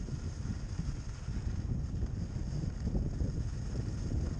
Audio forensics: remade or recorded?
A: recorded